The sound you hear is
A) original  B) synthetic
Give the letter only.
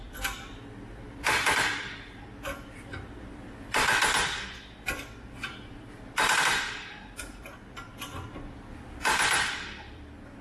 B